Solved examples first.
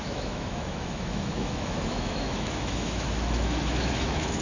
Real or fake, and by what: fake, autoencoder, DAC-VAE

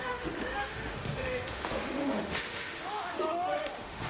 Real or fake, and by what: fake, autoencoder, DAC-VAE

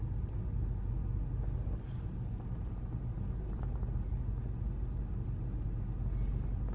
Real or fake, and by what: real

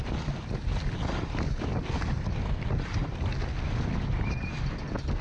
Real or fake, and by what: real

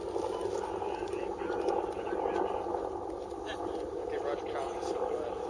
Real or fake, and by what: real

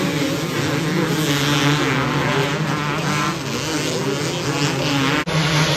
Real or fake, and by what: real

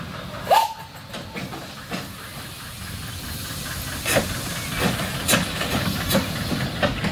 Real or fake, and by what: real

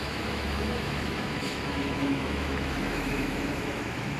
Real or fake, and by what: fake, autoencoder, DAC-VAE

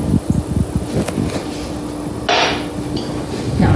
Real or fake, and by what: real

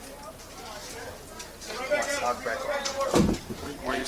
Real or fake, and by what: real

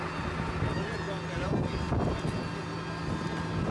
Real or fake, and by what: real